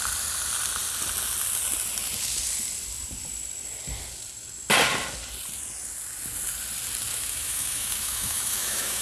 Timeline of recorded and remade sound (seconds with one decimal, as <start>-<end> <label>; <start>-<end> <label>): 0.0-7.1 recorded; 7.1-9.0 remade